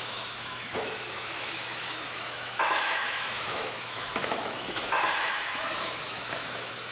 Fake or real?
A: fake